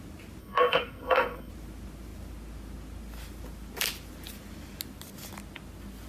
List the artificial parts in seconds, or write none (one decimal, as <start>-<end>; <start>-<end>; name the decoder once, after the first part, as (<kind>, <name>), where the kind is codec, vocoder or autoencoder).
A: 0.4-1.5 (codec, SNAC)